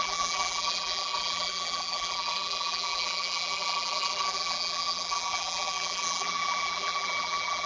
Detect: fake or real fake